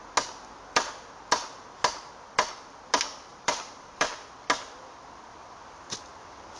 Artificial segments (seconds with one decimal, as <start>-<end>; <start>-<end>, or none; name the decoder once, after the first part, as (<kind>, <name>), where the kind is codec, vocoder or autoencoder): 3.3-4.3 (vocoder, BigVGAN v2)